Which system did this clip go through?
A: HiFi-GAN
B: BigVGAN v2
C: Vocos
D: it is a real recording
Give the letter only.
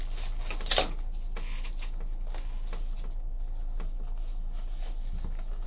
D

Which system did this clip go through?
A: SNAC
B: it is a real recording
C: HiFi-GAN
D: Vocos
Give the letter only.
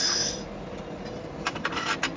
B